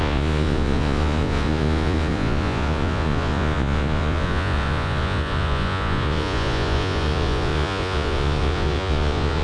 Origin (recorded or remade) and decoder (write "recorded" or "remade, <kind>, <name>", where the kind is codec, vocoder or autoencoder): remade, vocoder, Vocos